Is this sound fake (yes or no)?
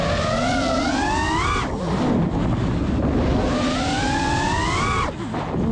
no